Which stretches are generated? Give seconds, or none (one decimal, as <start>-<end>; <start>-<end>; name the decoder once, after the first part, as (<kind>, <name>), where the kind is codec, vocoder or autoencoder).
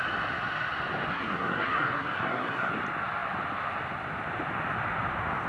1.1-2.7 (codec, SNAC)